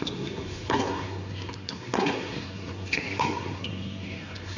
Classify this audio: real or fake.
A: fake